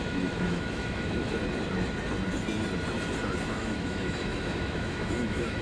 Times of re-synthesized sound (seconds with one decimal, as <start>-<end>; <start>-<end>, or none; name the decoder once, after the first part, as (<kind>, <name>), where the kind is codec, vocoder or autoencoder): 0.0-1.4 (autoencoder, DAC-VAE); 3.5-5.6